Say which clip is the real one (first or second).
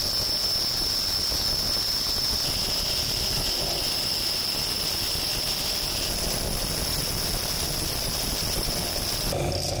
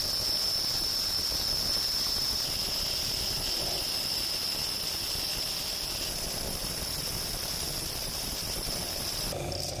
first